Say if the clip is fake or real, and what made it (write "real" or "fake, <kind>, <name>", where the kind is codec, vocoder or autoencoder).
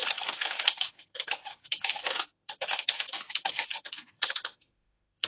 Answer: fake, autoencoder, DAC-VAE